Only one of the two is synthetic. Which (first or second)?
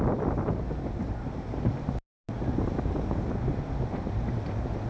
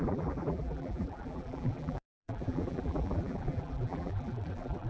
second